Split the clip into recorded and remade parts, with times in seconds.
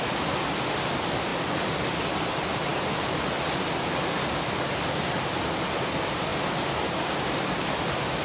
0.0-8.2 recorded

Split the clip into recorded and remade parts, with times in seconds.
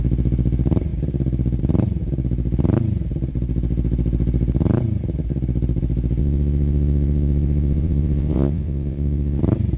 0.0-6.2 recorded; 6.2-9.4 remade; 9.4-9.8 recorded